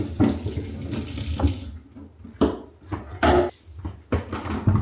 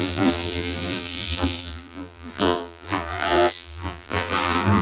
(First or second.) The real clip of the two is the first